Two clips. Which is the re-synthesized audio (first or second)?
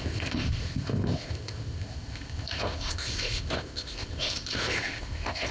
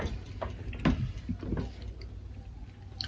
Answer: first